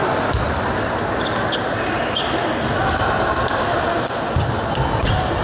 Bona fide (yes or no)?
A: yes